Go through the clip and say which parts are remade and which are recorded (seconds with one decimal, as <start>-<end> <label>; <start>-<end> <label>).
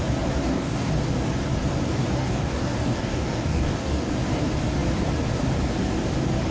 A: 0.0-0.4 recorded; 0.4-0.9 remade; 0.9-2.2 recorded; 2.2-4.1 remade; 4.1-6.5 recorded